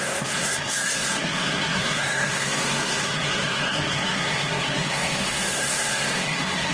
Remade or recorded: remade